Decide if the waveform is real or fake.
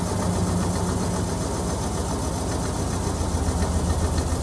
real